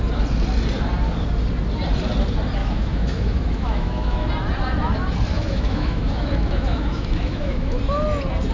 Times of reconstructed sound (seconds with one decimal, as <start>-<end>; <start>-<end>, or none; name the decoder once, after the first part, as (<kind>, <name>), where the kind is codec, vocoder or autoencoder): 2.6-4.3 (autoencoder, DAC-VAE); 5.3-7.8